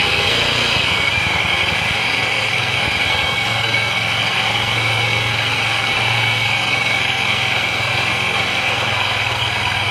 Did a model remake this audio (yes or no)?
yes